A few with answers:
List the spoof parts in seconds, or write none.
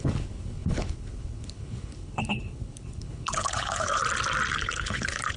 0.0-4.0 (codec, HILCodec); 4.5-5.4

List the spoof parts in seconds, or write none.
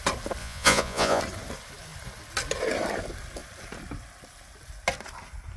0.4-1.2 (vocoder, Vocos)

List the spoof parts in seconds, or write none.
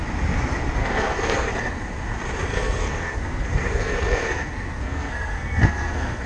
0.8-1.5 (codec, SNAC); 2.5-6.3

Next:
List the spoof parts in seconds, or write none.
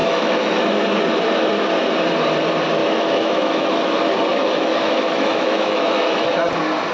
0.0-0.8 (autoencoder, DAC-VAE); 2.8-3.9; 4.3-6.3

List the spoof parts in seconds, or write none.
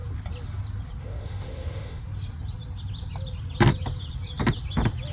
1.0-2.0 (autoencoder, DAC-VAE)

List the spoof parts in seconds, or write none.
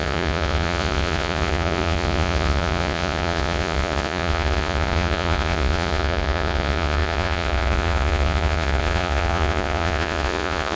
0.0-10.8 (vocoder, Vocos)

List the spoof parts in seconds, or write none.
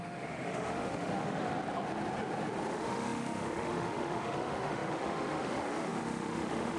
0.0-1.5 (autoencoder, DAC-VAE); 2.7-6.8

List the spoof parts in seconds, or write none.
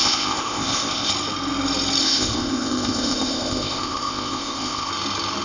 0.0-1.1 (codec, ZipCodec); 2.0-4.9